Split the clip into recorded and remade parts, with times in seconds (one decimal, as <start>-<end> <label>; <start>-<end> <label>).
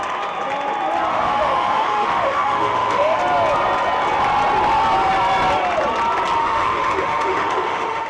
0.0-1.1 recorded; 1.1-3.2 remade; 3.2-6.4 recorded; 6.4-8.1 remade